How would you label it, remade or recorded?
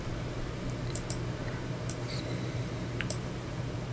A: remade